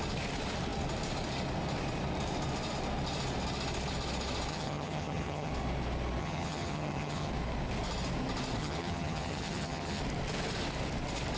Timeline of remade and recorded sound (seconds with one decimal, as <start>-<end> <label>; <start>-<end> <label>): 0.0-4.5 recorded; 4.5-5.5 remade; 5.5-6.2 recorded; 6.2-7.3 remade; 7.3-8.6 recorded; 8.6-10.0 remade; 10.0-11.4 recorded